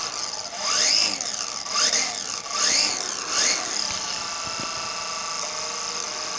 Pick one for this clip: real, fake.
real